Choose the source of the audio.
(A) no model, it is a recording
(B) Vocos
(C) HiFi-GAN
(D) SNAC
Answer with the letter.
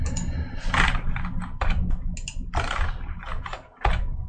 A